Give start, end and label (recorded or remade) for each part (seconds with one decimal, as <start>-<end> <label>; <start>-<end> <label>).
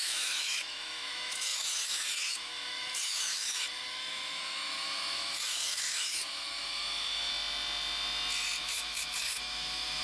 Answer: 0.0-7.3 remade; 7.3-8.6 recorded; 8.6-10.0 remade